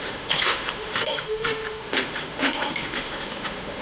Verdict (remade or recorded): remade